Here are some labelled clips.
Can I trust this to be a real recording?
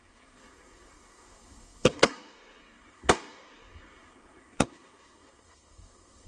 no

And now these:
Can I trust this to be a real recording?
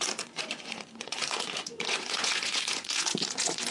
no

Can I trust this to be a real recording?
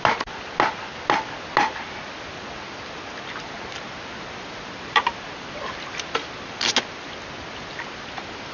yes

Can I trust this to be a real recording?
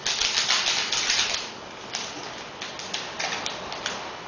yes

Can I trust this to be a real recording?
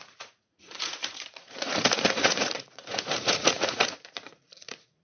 no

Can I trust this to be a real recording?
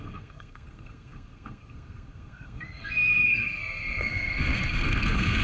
no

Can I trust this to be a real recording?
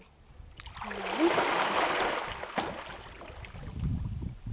yes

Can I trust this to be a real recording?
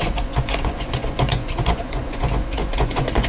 no